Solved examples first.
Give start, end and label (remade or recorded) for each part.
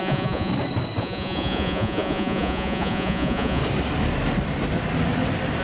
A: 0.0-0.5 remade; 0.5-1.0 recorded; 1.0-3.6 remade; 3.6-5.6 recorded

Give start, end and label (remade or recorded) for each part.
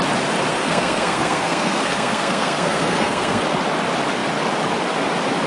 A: 0.0-0.5 recorded; 0.5-3.4 remade; 3.4-5.5 recorded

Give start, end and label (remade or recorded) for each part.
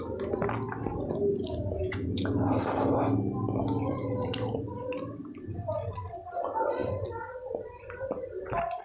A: 0.0-1.3 recorded; 1.3-2.3 remade; 2.3-8.8 recorded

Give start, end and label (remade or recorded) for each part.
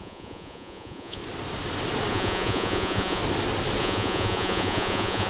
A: 0.0-1.2 remade; 1.2-2.1 recorded; 2.1-3.2 remade; 3.2-3.8 recorded; 3.8-5.3 remade